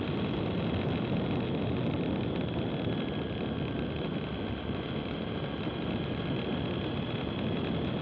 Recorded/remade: recorded